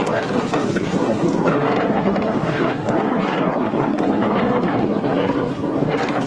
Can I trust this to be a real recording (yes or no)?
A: no